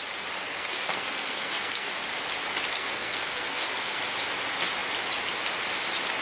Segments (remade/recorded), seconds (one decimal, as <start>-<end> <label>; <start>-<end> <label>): 0.0-0.4 recorded; 0.4-1.9 remade; 1.9-2.7 recorded; 2.7-4.0 remade; 4.0-6.2 recorded